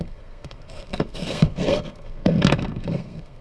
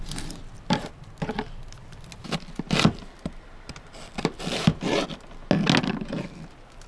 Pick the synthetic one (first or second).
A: first